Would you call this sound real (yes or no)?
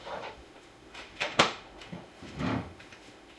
no